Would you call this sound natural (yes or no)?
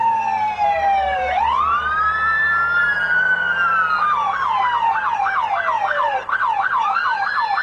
no